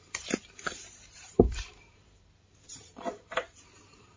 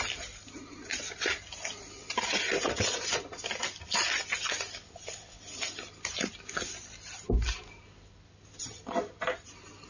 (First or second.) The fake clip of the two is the first